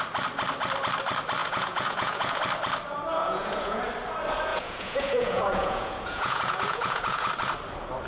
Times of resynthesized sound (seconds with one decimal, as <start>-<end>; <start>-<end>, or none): 1.4-2.4; 3.2-3.8; 4.5-7.3